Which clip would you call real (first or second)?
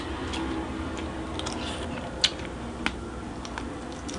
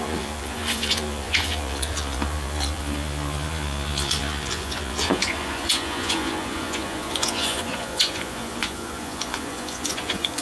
first